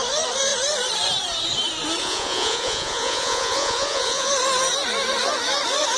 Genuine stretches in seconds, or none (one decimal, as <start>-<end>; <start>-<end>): 0.0-2.0; 4.3-6.0